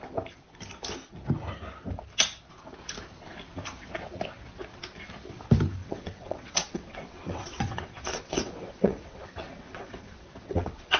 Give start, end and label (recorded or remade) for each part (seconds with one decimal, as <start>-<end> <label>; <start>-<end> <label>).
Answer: 0.0-5.8 recorded; 5.8-11.0 remade